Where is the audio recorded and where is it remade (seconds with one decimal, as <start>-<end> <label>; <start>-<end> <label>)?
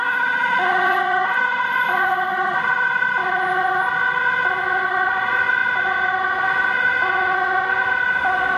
0.0-8.6 recorded